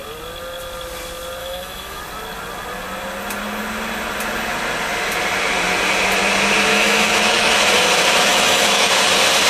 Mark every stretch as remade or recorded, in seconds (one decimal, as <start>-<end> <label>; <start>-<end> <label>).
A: 0.0-1.4 recorded; 1.4-2.0 remade; 2.0-6.7 recorded; 6.7-7.5 remade; 7.5-8.3 recorded; 8.3-8.9 remade; 8.9-9.5 recorded